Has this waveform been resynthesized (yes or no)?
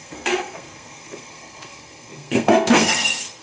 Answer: yes